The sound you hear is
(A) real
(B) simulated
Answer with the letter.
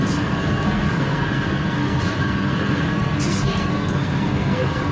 B